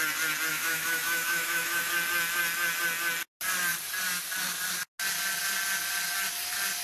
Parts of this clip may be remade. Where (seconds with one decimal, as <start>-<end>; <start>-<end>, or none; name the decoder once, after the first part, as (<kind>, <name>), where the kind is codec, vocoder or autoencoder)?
0.5-1.9 (autoencoder, DAC-VAE)